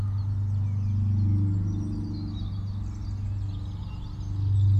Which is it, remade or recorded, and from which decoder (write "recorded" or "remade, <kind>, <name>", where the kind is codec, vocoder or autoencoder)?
recorded